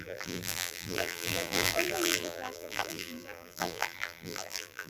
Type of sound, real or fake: fake